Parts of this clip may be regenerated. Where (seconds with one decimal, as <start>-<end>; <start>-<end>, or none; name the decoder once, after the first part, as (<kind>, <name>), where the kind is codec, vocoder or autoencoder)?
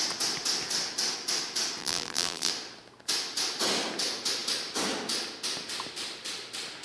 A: 1.8-2.5 (vocoder, BigVGAN v2)